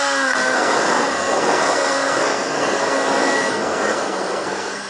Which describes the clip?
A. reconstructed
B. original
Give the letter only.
A